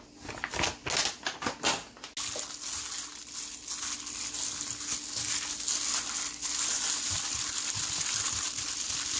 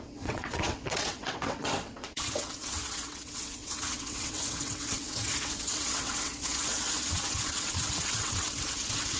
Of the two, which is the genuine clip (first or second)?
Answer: first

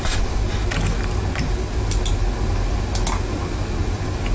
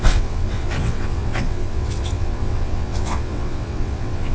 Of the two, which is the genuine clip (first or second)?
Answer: first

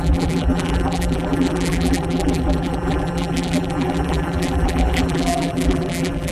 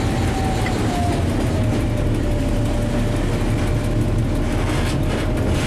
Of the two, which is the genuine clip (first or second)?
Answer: second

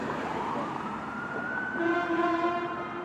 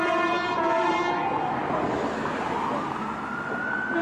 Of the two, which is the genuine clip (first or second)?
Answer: second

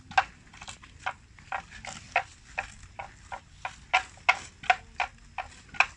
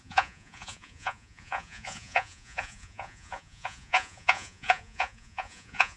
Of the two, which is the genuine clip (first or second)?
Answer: first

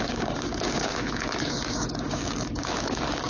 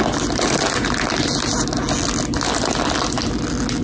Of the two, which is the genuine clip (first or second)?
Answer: second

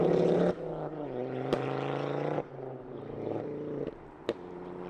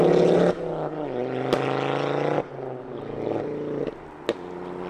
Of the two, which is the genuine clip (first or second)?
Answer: second